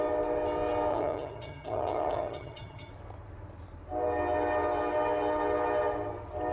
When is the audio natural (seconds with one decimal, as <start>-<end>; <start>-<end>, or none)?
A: 0.0-0.9; 2.9-6.5